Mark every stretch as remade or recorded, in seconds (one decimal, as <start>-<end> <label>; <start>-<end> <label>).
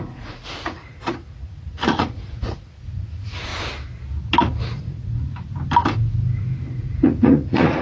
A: 0.0-3.5 remade; 3.5-4.4 recorded; 4.4-5.3 remade; 5.3-6.7 recorded; 6.7-7.8 remade